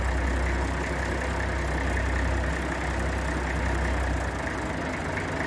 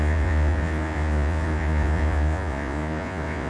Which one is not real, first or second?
second